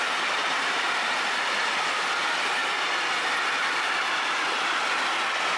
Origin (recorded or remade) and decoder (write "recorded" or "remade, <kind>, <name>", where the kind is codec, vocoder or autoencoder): recorded